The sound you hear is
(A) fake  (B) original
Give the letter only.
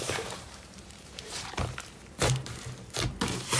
A